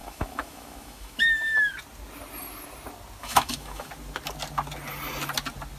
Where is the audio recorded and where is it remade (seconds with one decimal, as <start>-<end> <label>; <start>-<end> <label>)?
0.0-1.7 remade; 1.7-3.2 recorded; 3.2-3.9 remade; 3.9-5.8 recorded